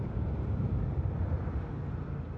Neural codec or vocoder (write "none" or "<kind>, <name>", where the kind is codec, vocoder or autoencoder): none